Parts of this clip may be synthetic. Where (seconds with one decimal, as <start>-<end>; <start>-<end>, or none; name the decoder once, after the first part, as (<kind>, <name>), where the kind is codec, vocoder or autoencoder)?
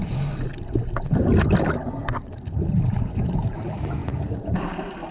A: none